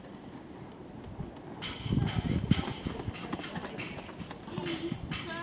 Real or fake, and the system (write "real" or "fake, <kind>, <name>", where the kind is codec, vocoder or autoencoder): fake, vocoder, BigVGAN v2